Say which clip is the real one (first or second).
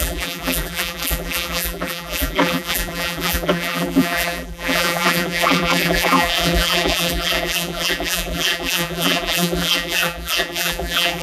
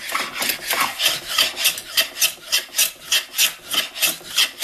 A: second